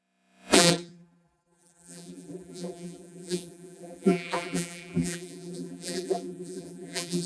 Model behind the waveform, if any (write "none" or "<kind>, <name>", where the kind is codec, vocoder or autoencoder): vocoder, BigVGAN v2